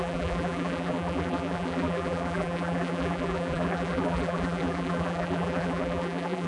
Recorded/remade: remade